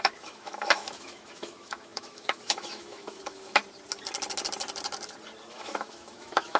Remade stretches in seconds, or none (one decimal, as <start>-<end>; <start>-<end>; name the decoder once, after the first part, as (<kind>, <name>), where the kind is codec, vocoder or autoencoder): 0.0-3.6 (autoencoder, DAC-VAE); 5.5-6.6